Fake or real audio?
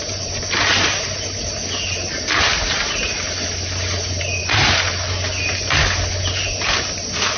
real